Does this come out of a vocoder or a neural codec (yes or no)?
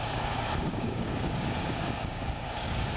yes